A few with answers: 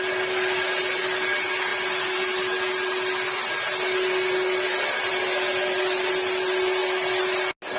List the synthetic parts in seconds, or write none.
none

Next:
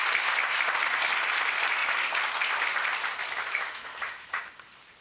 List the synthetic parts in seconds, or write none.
3.2-4.4 (autoencoder, DAC-VAE)